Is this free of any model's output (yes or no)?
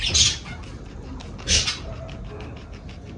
yes